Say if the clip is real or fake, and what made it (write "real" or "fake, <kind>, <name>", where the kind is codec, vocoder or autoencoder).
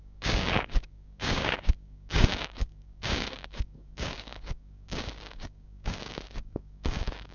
fake, codec, DAC